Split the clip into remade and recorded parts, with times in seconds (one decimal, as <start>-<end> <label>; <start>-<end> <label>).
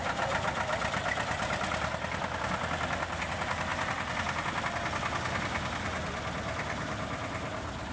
0.0-7.9 recorded